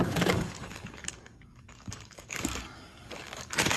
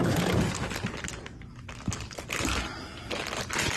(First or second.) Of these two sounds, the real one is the second